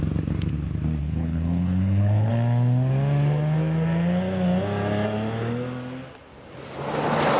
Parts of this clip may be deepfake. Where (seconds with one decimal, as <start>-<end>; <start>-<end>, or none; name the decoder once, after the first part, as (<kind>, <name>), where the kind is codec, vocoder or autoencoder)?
1.0-2.3 (codec, HILCodec)